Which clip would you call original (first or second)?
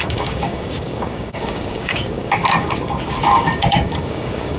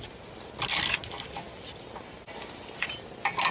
second